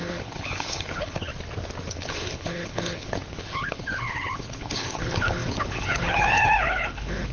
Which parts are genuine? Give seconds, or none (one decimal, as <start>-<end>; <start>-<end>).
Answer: 1.3-1.9